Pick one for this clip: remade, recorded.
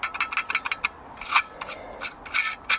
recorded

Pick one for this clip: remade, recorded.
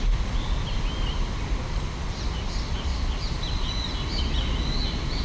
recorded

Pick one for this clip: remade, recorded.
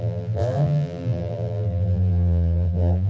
remade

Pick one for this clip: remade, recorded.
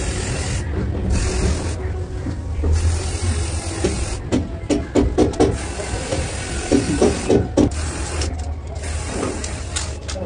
recorded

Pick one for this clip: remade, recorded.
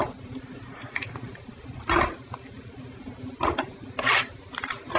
remade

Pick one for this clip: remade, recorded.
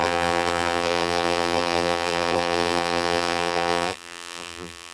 remade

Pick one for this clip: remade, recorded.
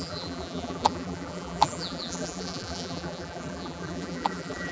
remade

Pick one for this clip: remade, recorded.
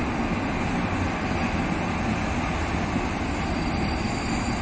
recorded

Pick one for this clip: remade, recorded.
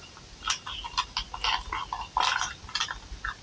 recorded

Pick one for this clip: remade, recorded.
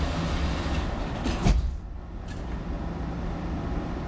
recorded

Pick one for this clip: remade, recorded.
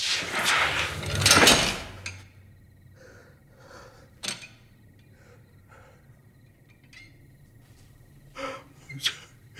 recorded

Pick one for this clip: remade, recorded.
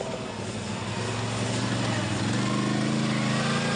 recorded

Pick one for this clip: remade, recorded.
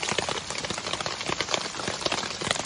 recorded